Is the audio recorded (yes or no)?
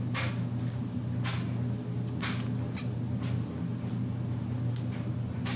yes